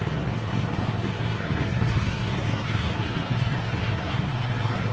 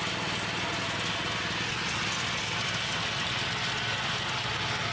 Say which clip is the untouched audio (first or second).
second